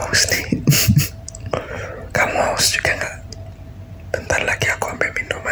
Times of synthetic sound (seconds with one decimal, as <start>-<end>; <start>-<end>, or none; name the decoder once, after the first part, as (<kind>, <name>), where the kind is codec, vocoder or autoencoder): 0.0-3.3 (vocoder, BigVGAN v2)